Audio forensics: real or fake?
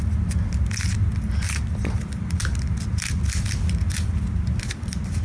real